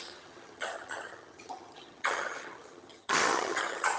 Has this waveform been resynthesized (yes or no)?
yes